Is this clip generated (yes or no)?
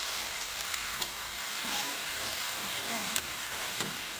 yes